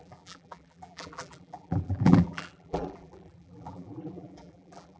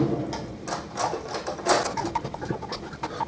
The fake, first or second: first